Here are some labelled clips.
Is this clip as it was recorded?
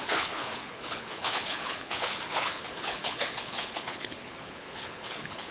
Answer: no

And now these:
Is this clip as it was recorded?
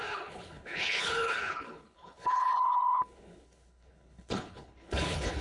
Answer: no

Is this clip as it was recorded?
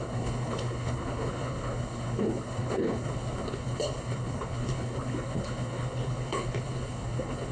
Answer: no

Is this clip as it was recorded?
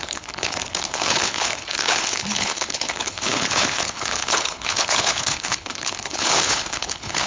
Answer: no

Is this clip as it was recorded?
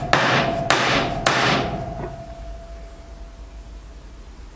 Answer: yes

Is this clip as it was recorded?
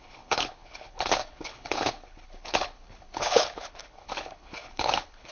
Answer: no